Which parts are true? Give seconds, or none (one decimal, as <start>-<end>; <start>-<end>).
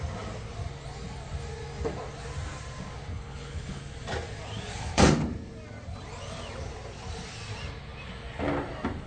0.0-3.1; 3.8-9.1